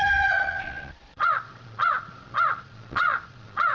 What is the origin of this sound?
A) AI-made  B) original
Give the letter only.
A